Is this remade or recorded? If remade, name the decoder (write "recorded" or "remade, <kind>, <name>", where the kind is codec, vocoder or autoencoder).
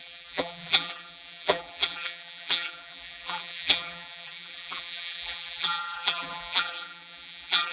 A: remade, vocoder, BigVGAN v2